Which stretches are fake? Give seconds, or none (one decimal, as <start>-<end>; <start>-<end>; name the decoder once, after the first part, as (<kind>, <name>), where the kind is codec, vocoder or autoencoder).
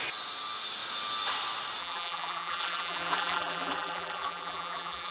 1.8-5.1 (vocoder, BigVGAN v2)